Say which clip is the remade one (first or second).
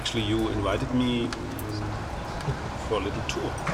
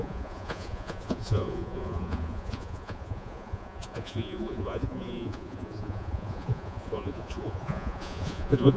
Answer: second